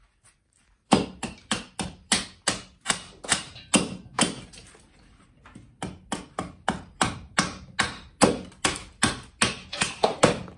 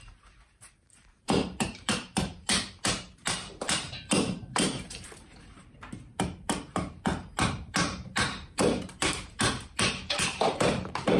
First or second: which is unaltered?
first